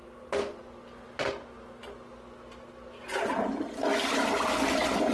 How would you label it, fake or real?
real